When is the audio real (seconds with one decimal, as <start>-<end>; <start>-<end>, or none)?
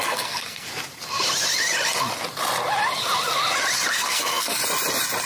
0.7-3.9; 4.6-5.3